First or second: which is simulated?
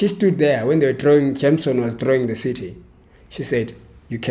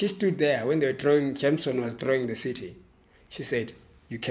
second